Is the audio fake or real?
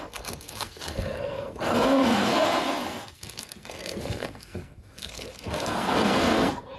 fake